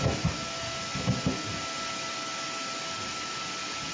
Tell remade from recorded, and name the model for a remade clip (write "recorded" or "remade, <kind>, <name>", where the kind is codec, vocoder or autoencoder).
recorded